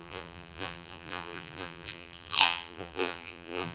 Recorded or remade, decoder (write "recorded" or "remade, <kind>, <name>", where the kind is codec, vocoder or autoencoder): remade, vocoder, BigVGAN v2